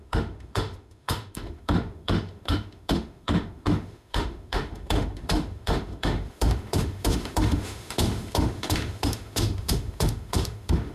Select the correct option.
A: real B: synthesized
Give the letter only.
B